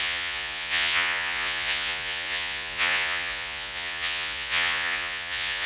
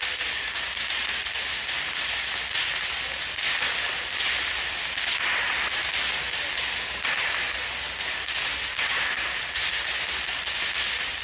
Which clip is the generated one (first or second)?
first